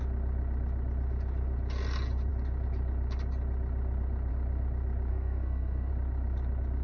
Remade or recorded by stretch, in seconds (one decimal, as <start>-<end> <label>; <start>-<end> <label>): 0.0-5.1 recorded; 5.1-5.9 remade; 5.9-6.8 recorded